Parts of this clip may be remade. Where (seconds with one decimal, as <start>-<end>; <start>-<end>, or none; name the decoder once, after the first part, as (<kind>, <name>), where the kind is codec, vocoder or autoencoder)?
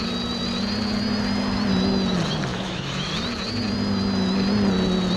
2.5-3.1 (autoencoder, DAC-VAE)